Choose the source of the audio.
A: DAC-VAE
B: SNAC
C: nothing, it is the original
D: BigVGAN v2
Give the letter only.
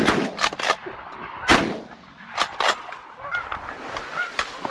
C